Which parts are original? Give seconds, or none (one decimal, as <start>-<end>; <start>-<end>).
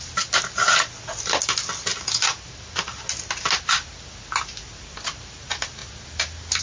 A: 0.0-6.6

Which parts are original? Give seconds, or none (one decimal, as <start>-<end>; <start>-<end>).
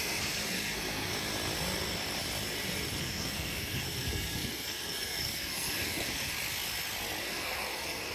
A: 1.1-3.0; 6.3-7.2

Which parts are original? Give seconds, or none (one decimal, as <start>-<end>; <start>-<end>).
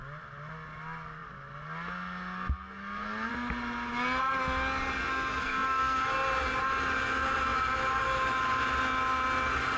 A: 0.0-5.0; 6.0-9.8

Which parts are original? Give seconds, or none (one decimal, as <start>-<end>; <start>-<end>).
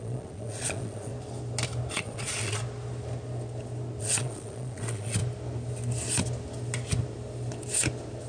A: 1.1-1.9; 2.6-4.0; 5.2-8.3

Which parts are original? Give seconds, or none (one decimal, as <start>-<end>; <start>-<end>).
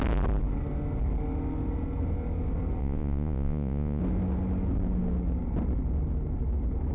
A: 0.0-2.8; 4.0-6.9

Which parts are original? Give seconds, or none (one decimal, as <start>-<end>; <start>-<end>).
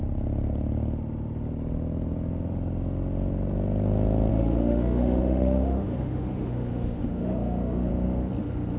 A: 0.0-4.3; 7.9-8.8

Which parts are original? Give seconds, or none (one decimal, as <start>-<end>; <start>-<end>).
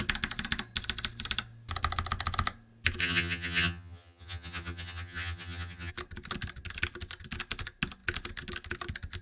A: 0.0-3.0; 5.9-9.2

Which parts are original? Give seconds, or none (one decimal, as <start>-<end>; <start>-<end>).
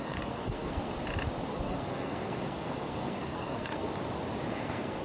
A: 0.9-1.5; 3.9-4.5